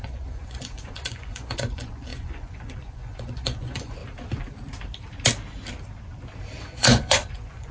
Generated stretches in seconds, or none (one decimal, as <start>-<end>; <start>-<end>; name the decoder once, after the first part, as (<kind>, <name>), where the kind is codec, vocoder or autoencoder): 0.0-4.0 (vocoder, Vocos); 6.6-7.7